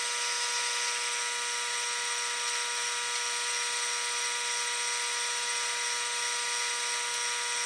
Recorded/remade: recorded